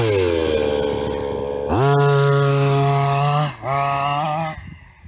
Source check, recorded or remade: recorded